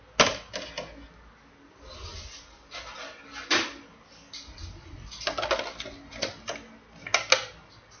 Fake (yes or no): no